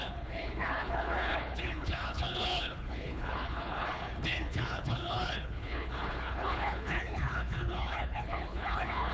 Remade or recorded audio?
remade